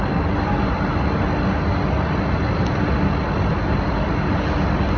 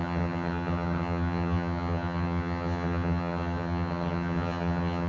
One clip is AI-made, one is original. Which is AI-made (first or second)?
second